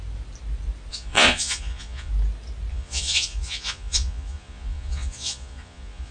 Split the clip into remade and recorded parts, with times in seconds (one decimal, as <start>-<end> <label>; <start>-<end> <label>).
0.0-0.9 recorded; 0.9-2.1 remade; 2.1-2.7 recorded; 2.7-6.1 remade